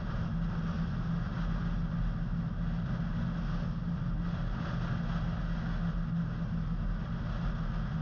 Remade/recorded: recorded